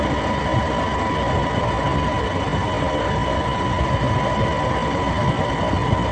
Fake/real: real